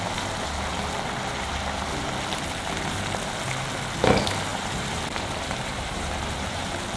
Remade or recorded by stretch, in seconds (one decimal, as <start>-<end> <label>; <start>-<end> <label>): 0.0-4.5 recorded; 4.5-6.6 remade; 6.6-7.0 recorded